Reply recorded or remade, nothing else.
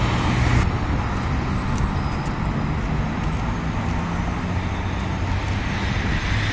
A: recorded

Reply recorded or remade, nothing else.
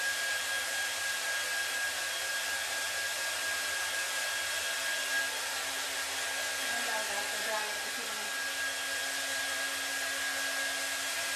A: recorded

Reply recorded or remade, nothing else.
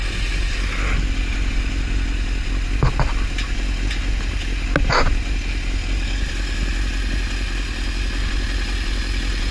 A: recorded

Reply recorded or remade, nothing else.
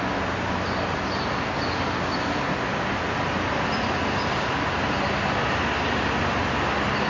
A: recorded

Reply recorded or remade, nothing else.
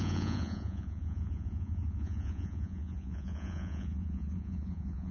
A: remade